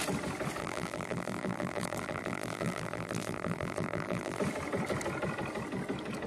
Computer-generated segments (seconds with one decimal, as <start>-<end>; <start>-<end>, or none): 0.6-4.4